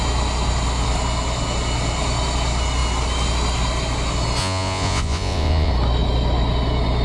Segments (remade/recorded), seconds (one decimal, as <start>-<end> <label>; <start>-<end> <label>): 0.0-4.4 recorded; 4.4-5.7 remade; 5.7-7.0 recorded